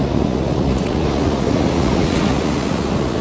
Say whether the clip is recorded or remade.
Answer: remade